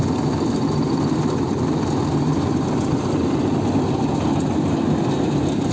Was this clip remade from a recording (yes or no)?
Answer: no